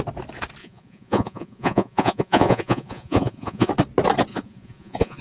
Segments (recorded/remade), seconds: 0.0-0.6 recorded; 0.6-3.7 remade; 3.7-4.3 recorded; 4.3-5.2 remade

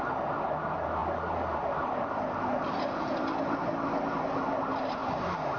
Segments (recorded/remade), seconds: 0.0-5.6 recorded

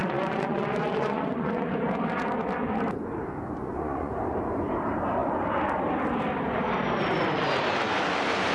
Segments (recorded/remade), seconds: 0.0-1.7 remade; 1.7-3.6 recorded; 3.6-4.1 remade; 4.1-8.5 recorded

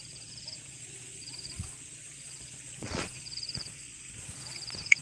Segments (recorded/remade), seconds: 0.0-5.0 remade